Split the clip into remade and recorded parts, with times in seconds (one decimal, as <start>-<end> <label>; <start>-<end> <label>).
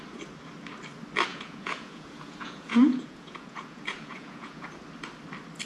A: 0.0-1.3 recorded; 1.3-4.7 remade; 4.7-5.7 recorded